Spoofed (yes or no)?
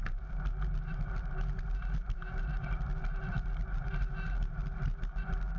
yes